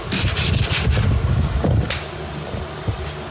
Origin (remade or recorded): recorded